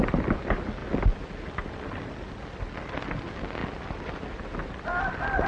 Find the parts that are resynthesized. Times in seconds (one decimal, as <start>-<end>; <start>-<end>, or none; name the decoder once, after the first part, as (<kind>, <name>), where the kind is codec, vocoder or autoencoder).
none